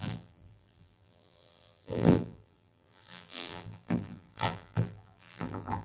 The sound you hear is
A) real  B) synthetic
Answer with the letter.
B